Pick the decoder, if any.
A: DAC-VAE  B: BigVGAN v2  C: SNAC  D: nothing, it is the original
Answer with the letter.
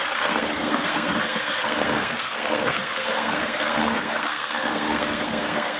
C